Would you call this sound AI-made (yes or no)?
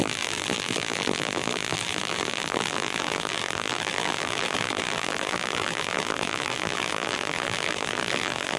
yes